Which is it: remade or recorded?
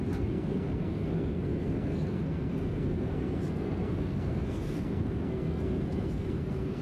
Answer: remade